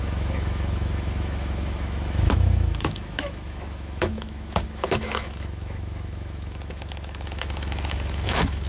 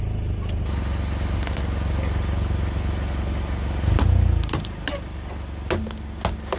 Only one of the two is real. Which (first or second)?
second